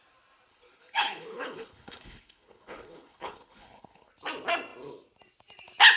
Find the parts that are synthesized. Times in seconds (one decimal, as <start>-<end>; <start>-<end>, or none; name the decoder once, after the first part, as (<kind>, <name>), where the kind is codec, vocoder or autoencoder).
0.5-4.1 (codec, HILCodec)